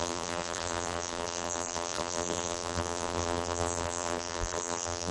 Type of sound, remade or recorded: remade